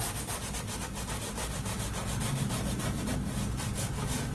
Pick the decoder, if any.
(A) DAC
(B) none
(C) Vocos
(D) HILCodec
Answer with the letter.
B